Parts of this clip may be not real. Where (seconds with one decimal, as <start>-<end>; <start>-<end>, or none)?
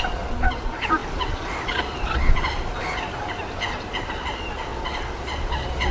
0.0-3.2; 4.1-5.9